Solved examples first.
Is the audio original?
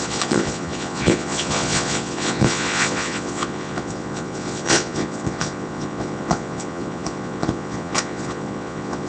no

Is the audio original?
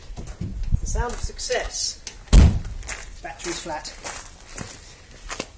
yes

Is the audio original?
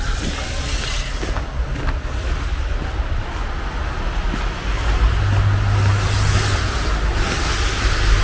yes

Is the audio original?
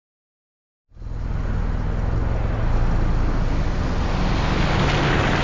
yes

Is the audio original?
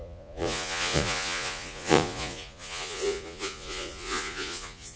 no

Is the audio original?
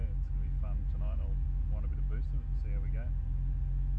yes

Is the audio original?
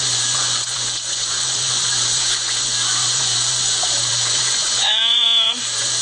no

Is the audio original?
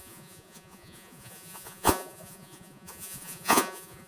no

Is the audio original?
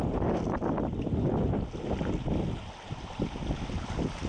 yes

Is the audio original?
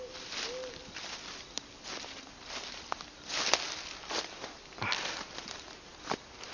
yes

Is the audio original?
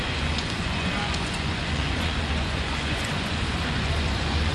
no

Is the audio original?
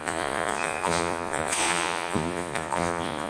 no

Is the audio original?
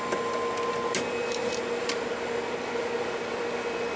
yes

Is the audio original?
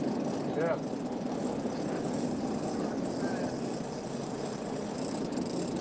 yes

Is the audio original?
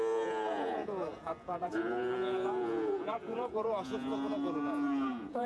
no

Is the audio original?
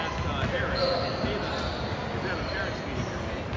yes